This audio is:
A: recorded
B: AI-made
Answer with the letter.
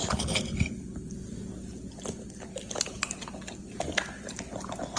A